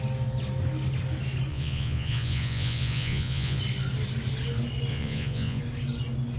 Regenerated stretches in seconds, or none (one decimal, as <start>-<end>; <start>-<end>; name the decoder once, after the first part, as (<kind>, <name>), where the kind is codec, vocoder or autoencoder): 1.5-3.6 (vocoder, Vocos); 4.9-5.6